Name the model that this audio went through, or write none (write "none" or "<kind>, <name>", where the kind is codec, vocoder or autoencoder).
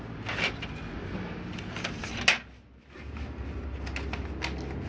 none